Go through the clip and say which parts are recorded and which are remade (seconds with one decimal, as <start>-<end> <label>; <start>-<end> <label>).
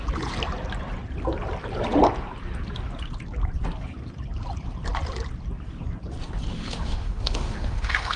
0.0-6.5 recorded; 6.5-8.2 remade